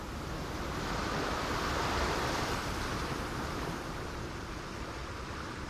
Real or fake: real